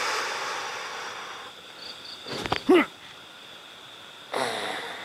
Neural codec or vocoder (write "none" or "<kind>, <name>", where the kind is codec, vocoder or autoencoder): none